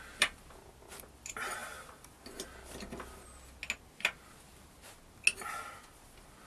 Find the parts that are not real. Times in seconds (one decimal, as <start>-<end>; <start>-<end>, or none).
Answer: none